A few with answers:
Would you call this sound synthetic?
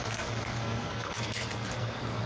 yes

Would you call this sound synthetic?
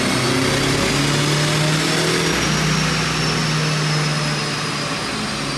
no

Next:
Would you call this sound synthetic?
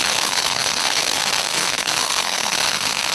yes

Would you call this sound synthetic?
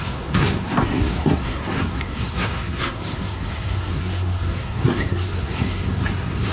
yes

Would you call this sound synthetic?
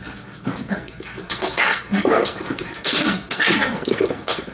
yes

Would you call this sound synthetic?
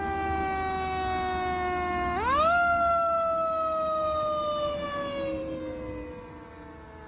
no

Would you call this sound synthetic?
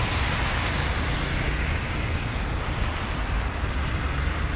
no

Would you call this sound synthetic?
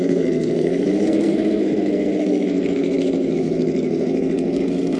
yes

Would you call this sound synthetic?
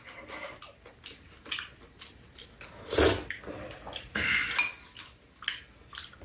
no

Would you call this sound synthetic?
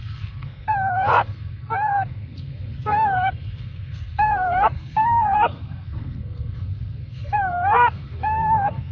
yes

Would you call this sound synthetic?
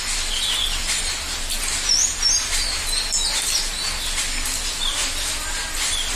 no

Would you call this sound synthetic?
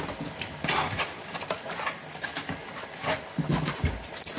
no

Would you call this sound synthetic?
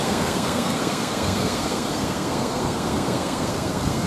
yes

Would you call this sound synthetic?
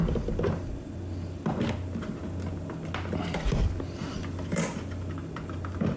no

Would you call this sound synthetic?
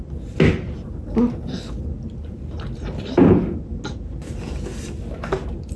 no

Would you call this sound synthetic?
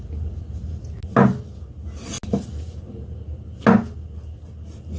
no